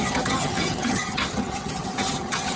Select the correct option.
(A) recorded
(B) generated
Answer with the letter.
B